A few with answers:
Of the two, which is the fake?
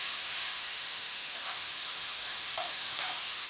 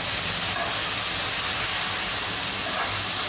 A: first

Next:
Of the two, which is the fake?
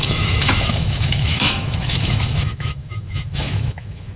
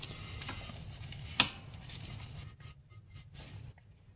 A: first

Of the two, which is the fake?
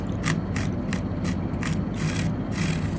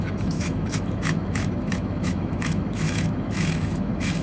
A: second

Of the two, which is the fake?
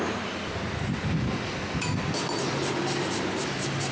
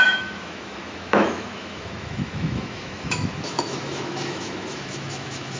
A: second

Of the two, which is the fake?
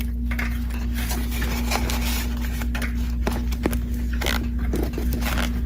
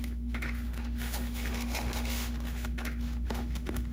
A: second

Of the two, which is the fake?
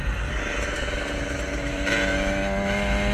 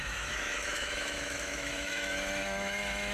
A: second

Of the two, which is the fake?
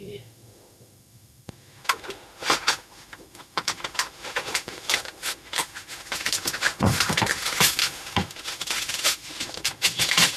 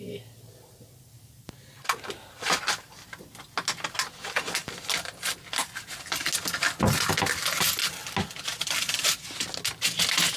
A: first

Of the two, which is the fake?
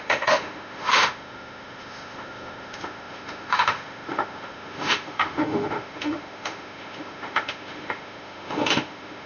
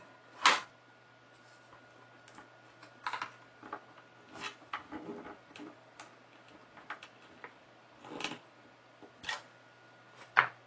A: first